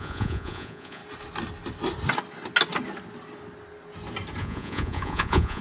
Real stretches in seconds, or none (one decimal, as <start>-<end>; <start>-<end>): 1.0-4.4